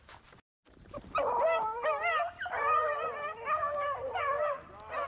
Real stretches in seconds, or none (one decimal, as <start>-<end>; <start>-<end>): 2.1-5.1